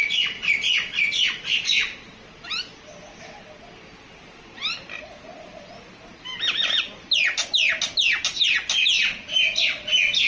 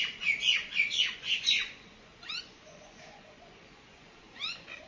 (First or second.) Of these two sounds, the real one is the first